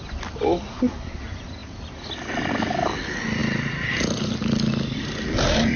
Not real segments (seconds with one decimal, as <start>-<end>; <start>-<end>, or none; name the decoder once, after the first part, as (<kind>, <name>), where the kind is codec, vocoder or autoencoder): 0.7-1.2 (codec, SNAC)